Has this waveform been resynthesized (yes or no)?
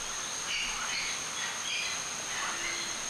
no